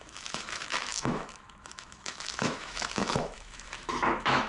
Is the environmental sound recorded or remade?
remade